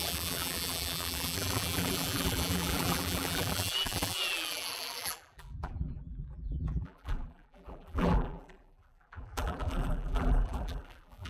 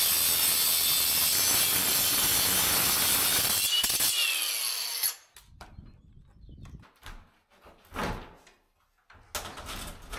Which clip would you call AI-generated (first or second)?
first